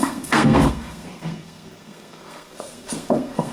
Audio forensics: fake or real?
fake